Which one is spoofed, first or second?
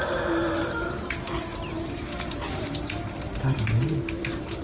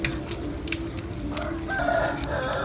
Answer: first